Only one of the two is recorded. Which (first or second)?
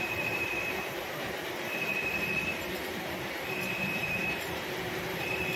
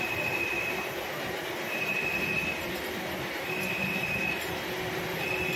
second